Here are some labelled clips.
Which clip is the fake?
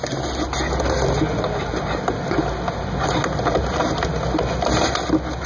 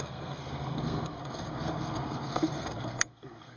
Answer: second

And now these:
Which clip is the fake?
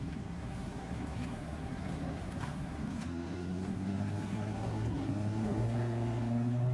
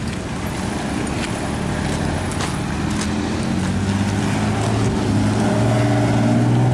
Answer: first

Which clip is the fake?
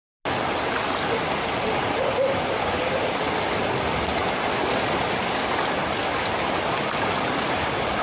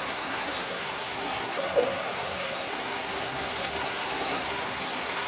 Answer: second